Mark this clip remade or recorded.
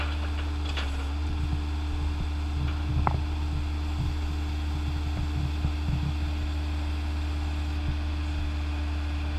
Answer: recorded